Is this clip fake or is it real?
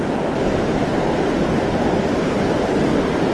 real